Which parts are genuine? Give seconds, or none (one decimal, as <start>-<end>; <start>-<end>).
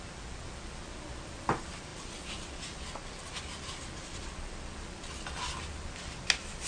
0.0-6.7